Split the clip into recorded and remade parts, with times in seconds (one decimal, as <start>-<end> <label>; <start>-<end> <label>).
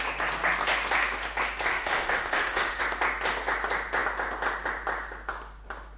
0.0-1.7 recorded; 1.7-2.8 remade; 2.8-6.0 recorded